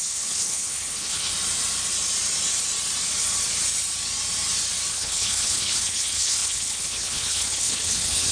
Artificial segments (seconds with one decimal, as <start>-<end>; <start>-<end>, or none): 0.0-1.3; 4.9-8.3